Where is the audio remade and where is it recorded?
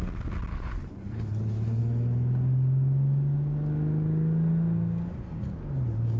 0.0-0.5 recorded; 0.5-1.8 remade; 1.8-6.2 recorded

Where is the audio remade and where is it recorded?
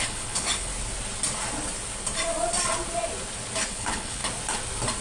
0.0-0.7 remade; 0.7-3.7 recorded; 3.7-4.2 remade; 4.2-5.0 recorded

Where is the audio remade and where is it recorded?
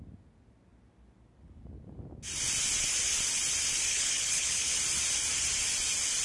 0.0-3.9 recorded; 3.9-4.7 remade; 4.7-6.2 recorded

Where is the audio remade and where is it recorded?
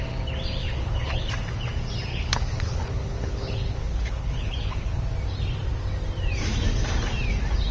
0.0-0.6 recorded; 0.6-1.3 remade; 1.3-2.1 recorded; 2.1-5.0 remade; 5.0-7.7 recorded